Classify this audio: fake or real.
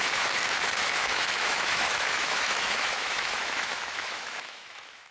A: fake